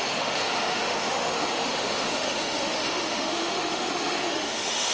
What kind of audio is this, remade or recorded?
remade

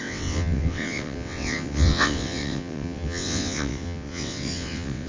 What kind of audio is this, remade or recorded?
remade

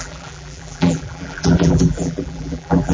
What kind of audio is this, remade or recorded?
remade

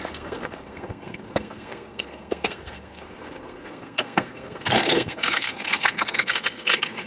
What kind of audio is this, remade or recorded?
remade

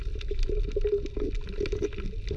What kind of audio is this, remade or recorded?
recorded